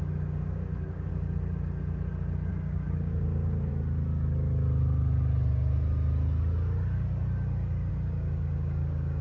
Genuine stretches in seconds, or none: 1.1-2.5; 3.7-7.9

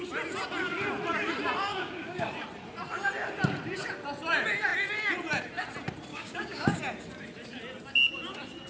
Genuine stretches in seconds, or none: 0.0-1.7; 2.3-6.1; 6.8-8.7

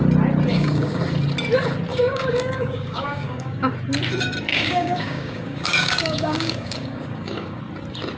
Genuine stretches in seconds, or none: 0.0-0.5; 1.0-1.9; 3.7-4.5; 7.6-8.2

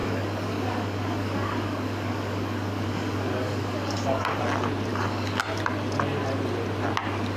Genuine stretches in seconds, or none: 4.4-4.9; 5.4-7.4